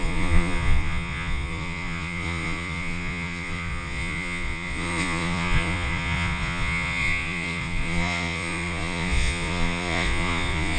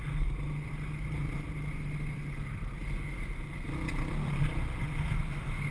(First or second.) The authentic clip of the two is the second